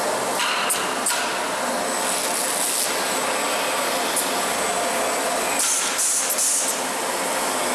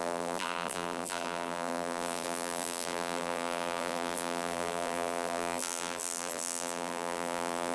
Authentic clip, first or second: first